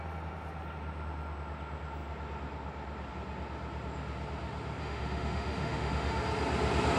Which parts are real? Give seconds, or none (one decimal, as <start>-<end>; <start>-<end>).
0.0-4.8; 6.2-7.0